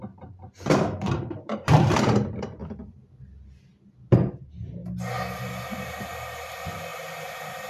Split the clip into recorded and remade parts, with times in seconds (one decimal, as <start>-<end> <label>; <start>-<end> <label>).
0.0-2.6 remade; 2.6-4.3 recorded; 4.3-4.8 remade; 4.8-5.4 recorded; 5.4-7.7 remade